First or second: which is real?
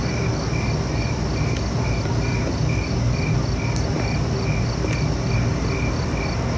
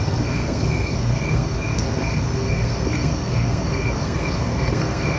first